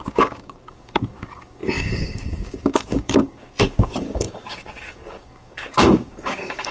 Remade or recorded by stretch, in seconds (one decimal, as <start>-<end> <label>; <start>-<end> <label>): 0.0-6.7 remade